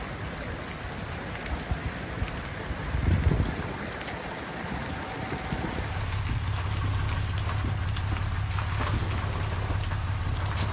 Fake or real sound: real